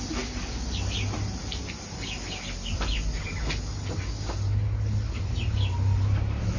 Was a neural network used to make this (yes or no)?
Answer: no